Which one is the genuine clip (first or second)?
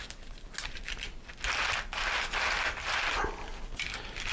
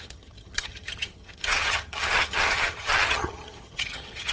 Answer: first